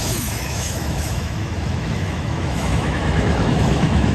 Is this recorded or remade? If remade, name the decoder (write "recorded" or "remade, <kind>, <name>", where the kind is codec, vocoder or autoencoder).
remade, autoencoder, DAC-VAE